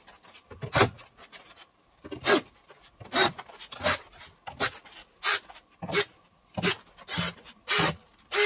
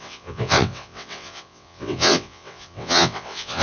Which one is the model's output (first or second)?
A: second